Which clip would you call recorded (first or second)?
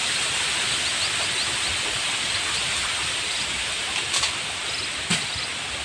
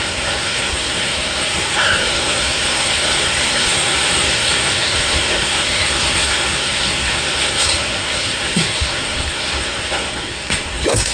first